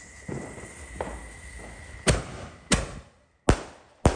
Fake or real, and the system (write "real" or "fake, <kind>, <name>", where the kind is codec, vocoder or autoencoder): real